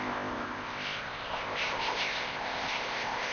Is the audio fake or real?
fake